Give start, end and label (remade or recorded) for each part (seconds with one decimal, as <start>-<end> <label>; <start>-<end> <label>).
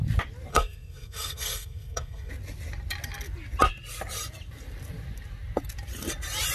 0.0-0.5 recorded; 0.5-2.3 remade; 2.3-6.5 recorded